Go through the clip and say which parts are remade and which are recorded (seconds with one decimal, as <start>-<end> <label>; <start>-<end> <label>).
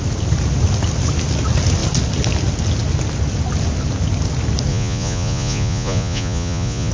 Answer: 0.0-4.7 recorded; 4.7-6.9 remade